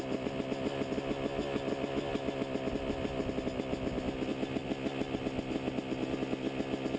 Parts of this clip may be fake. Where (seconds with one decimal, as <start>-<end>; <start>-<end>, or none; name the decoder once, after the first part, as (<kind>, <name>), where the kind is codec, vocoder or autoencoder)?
none